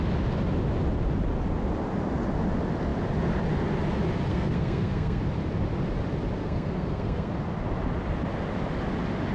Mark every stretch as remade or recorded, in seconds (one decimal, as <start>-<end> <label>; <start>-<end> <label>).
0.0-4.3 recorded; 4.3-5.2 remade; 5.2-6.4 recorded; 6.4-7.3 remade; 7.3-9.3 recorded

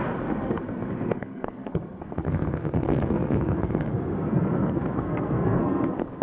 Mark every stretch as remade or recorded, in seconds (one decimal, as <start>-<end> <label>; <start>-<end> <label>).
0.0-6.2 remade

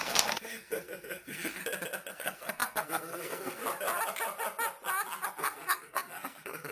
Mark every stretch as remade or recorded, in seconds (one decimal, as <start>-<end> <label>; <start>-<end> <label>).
0.0-1.6 remade; 1.6-2.1 recorded; 2.1-3.6 remade; 3.6-5.4 recorded; 5.4-6.7 remade